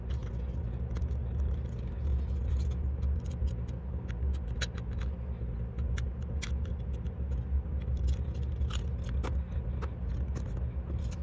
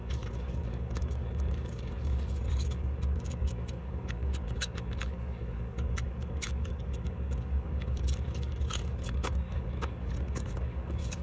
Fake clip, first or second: second